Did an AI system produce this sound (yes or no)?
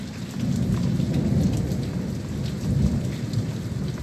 no